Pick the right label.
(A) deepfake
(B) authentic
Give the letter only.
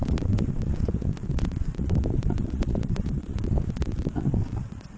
A